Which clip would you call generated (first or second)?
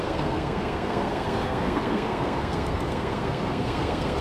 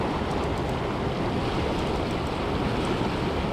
first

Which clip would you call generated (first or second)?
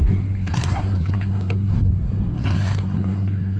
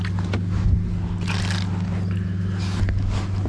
first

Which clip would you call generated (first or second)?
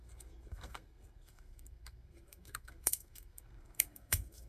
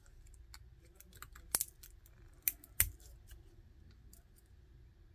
first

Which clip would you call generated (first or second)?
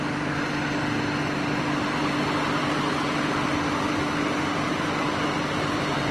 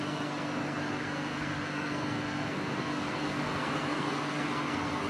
second